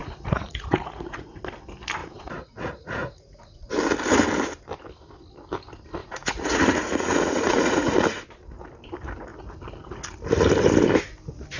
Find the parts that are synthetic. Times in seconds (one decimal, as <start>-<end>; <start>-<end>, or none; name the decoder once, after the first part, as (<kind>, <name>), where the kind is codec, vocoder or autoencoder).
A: 0.0-1.4 (vocoder, Vocos); 2.0-3.7; 6.0-7.9